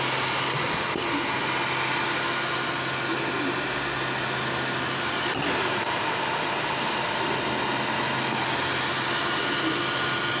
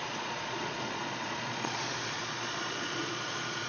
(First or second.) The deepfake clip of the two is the second